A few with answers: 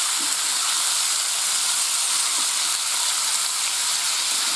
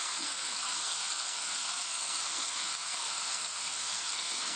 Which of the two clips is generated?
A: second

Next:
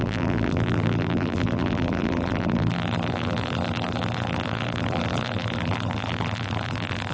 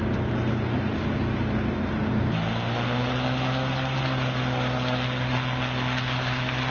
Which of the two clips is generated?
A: first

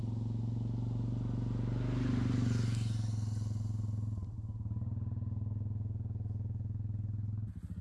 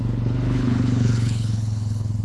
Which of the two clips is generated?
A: second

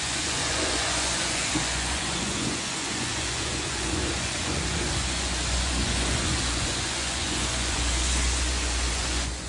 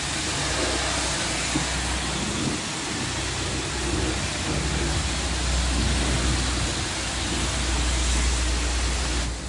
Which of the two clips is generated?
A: first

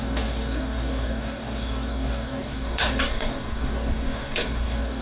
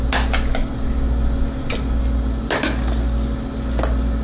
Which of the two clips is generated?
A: first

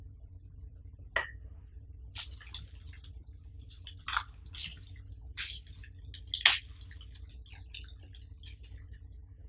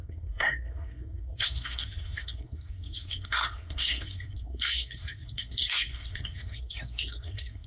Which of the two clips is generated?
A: second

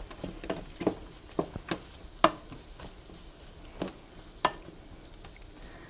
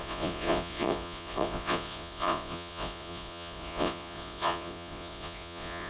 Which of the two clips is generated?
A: second